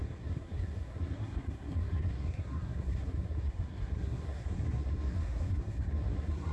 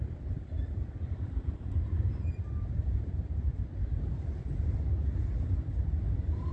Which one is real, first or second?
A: second